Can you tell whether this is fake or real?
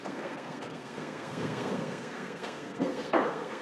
fake